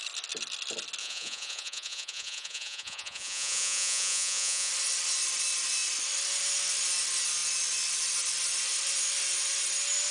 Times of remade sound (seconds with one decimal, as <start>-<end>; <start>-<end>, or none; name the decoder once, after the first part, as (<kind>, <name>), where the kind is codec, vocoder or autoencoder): 1.0-4.7 (vocoder, Vocos)